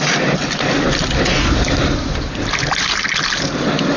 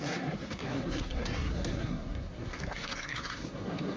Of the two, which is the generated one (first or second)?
second